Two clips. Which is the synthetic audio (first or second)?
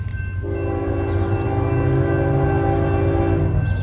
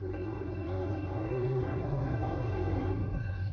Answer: second